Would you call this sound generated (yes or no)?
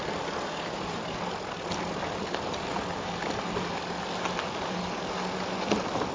no